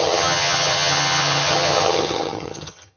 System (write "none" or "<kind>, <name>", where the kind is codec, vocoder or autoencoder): vocoder, HiFi-GAN